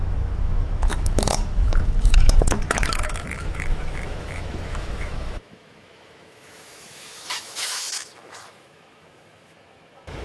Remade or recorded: remade